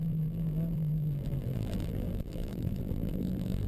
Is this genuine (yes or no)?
no